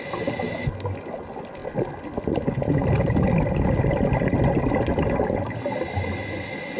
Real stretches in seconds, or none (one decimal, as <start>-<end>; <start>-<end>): 0.0-6.8